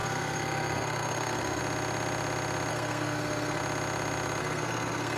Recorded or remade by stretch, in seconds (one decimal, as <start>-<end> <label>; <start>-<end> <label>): 0.0-1.6 remade; 1.6-2.7 recorded; 2.7-3.6 remade; 3.6-4.4 recorded; 4.4-5.2 remade